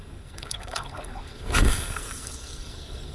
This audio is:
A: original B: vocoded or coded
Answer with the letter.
B